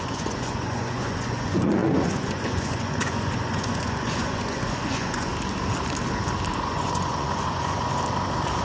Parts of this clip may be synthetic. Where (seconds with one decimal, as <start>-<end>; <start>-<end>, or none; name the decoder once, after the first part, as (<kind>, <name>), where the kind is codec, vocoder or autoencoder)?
0.0-5.3 (vocoder, Vocos); 6.5-7.9